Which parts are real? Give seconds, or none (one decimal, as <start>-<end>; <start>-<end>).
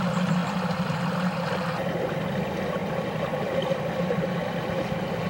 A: 0.0-2.8; 4.1-5.3